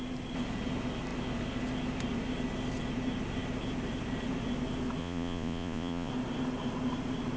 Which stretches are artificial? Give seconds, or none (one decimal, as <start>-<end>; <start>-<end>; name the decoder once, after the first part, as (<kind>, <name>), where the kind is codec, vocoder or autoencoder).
5.0-6.1 (vocoder, Vocos)